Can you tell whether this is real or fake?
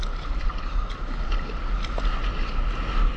real